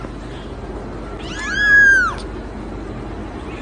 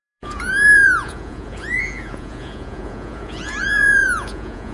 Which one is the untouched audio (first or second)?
first